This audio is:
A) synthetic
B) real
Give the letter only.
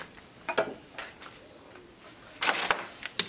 B